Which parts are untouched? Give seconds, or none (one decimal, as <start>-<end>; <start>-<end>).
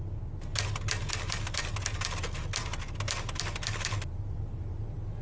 0.0-5.2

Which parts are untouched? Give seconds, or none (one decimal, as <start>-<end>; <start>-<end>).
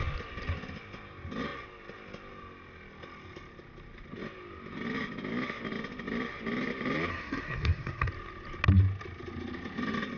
0.0-7.1; 8.1-10.2